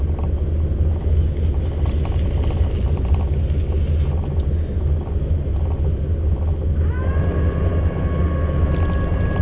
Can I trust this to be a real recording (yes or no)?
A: yes